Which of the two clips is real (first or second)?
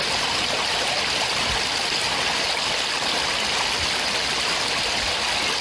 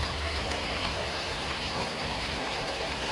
first